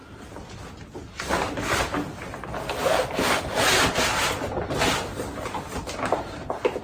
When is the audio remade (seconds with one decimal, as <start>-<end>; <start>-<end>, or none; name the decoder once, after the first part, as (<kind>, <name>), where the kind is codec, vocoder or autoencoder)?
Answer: none